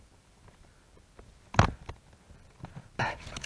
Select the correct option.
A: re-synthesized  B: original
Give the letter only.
A